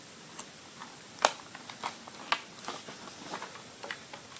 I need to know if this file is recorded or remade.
recorded